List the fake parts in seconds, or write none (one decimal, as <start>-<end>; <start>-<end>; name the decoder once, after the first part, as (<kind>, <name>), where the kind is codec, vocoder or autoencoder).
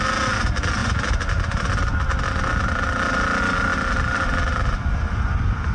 none